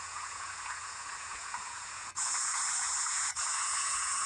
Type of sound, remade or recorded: remade